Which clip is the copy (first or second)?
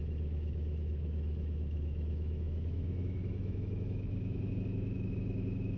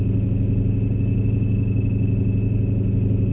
first